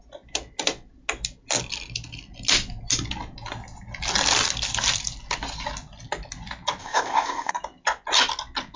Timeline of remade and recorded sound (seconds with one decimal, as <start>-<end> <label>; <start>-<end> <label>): 0.0-6.8 recorded; 6.8-7.5 remade; 7.5-8.8 recorded